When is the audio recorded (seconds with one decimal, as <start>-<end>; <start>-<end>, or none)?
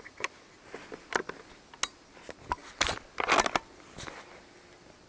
0.0-5.1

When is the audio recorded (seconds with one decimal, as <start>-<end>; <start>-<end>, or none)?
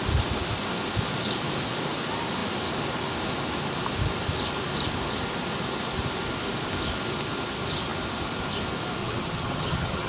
0.0-9.0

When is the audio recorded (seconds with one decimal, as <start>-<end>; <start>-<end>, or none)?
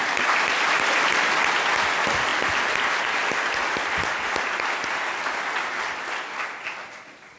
0.0-7.4